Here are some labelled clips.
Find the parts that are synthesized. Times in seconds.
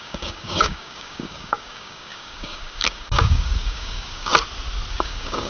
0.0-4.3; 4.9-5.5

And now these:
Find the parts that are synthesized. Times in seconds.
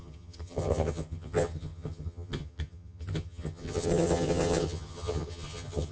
0.0-5.9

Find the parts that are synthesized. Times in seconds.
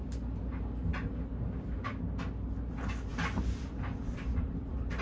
none